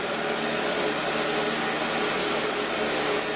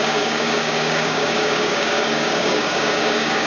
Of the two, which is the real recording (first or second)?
first